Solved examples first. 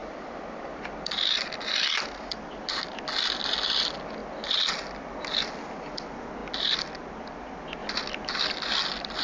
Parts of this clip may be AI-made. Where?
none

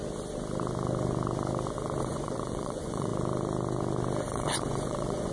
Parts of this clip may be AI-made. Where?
2.0-3.1; 4.3-5.3

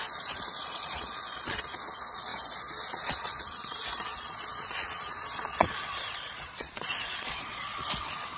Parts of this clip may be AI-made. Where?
0.0-8.4

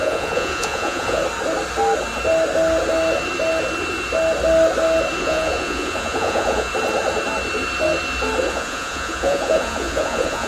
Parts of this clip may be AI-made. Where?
0.0-1.2; 5.2-6.7; 8.5-10.5

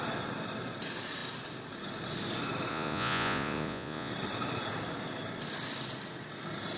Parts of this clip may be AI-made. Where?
2.7-4.1